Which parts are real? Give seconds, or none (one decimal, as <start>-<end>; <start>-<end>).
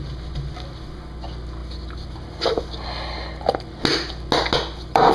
0.0-5.1